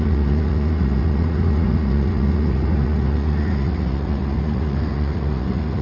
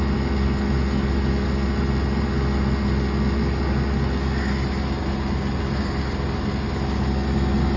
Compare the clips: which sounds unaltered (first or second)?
second